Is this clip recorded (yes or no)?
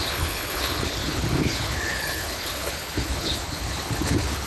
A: no